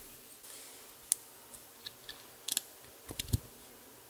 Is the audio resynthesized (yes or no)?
no